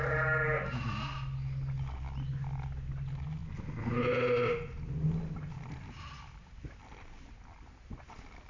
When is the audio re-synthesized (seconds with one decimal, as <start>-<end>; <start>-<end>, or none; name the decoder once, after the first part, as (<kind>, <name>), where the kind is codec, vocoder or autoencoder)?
none